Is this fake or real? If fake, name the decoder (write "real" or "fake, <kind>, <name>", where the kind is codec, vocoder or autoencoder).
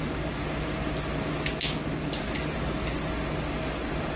real